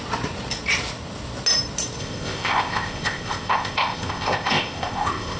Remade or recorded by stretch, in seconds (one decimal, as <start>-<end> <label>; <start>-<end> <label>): 0.0-2.0 recorded; 2.0-5.4 remade